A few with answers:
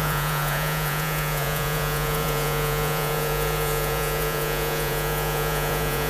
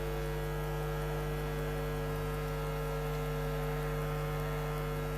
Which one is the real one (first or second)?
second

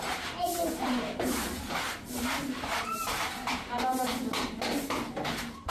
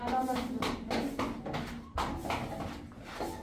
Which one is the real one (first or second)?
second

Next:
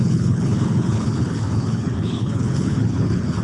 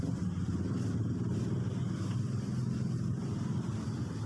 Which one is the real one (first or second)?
second